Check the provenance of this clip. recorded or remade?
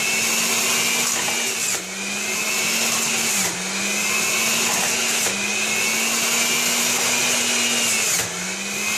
recorded